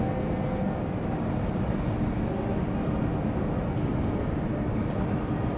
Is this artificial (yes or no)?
no